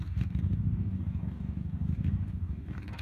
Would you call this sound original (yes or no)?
no